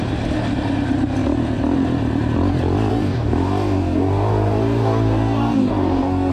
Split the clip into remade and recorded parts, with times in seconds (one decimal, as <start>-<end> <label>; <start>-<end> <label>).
0.0-2.9 recorded; 2.9-6.3 remade